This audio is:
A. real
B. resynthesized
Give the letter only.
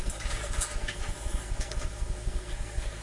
B